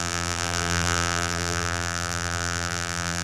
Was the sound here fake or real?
fake